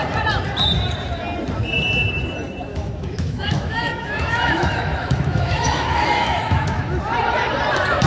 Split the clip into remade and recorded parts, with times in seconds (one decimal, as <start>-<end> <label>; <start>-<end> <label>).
0.0-2.7 recorded; 2.7-7.0 remade; 7.0-8.1 recorded